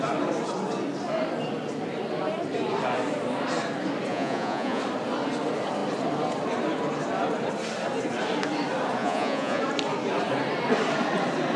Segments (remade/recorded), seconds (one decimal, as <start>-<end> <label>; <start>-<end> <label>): 0.0-4.1 recorded; 4.1-4.8 remade; 4.8-9.0 recorded; 9.0-9.6 remade; 9.6-11.6 recorded